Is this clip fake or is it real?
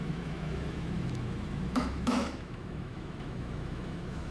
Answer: fake